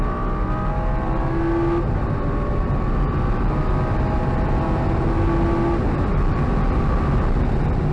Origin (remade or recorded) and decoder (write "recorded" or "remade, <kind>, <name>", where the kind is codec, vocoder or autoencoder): recorded